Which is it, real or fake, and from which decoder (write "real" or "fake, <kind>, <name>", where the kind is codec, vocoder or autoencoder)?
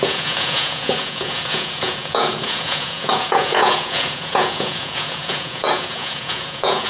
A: fake, vocoder, Vocos